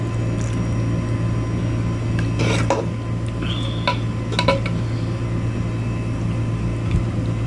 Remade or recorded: recorded